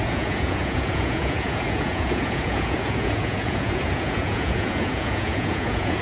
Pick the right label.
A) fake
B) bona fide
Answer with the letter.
A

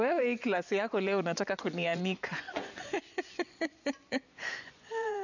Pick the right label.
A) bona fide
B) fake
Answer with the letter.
B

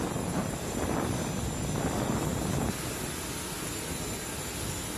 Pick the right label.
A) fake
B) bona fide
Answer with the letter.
B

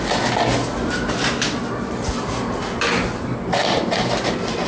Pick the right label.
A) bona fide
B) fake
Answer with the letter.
A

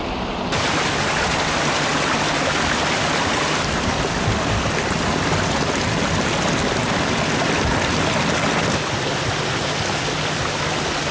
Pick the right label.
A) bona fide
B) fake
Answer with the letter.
A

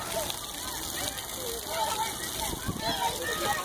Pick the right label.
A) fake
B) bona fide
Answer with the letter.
B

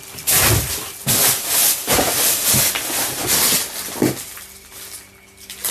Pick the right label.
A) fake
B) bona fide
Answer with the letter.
B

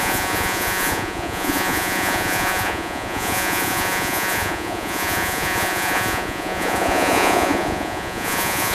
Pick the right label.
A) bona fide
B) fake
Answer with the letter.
B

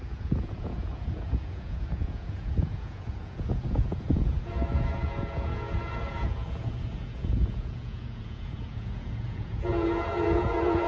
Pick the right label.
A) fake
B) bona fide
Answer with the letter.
A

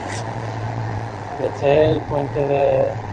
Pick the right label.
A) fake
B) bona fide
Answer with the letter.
A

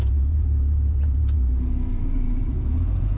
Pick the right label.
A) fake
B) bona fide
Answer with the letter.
A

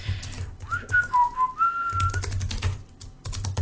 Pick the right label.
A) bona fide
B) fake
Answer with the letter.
A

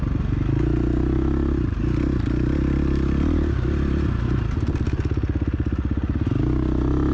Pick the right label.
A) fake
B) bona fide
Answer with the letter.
B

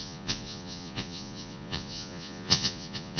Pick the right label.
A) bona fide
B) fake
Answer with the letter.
B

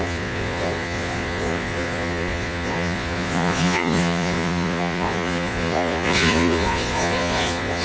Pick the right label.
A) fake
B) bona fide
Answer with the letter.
A